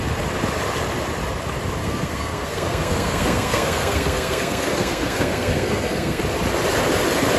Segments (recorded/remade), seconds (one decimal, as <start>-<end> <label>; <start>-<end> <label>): 0.0-1.8 recorded; 1.8-6.2 remade; 6.2-7.4 recorded